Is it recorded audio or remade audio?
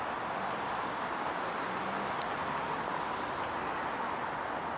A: recorded